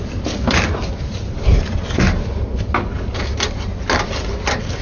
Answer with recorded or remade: recorded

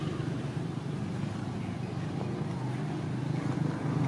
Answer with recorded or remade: recorded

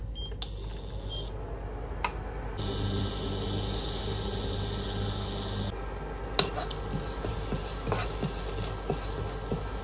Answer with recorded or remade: recorded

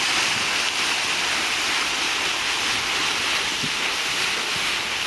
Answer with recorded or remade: recorded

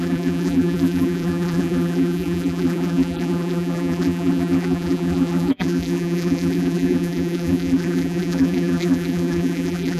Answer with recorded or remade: remade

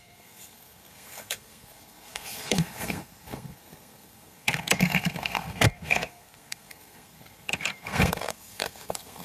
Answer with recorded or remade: remade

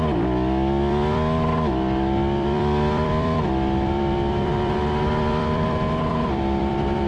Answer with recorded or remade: remade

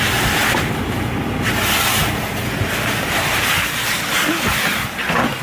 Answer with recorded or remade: recorded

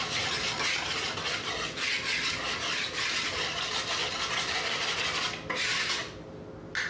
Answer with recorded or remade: recorded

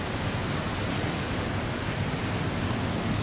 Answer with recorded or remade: recorded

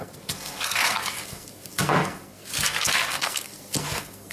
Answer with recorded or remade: remade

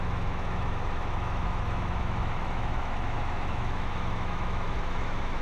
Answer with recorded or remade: remade